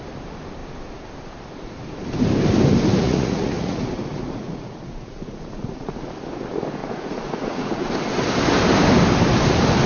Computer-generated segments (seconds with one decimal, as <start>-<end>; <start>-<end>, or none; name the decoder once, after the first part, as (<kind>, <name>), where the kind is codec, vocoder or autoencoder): 3.0-6.1 (vocoder, Vocos); 6.8-7.9